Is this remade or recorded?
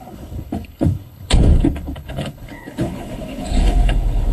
remade